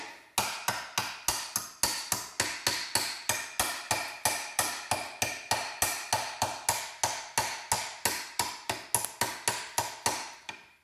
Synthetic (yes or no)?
no